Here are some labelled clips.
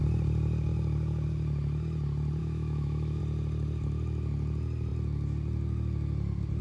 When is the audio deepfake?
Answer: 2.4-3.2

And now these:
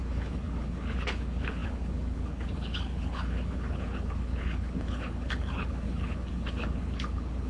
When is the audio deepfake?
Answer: 0.0-7.5

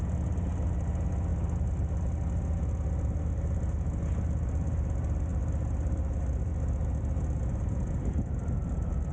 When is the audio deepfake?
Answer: none

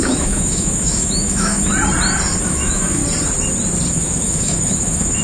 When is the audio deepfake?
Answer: 0.0-1.7; 2.4-3.0; 3.9-5.2

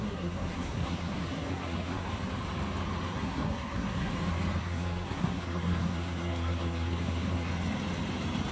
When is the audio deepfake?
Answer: 0.0-2.1; 3.1-4.1; 4.6-7.5

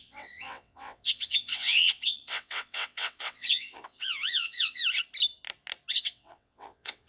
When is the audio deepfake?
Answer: 0.0-4.8; 5.9-7.1

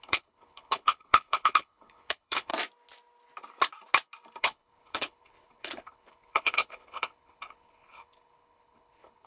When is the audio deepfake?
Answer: 0.0-2.5; 4.4-9.3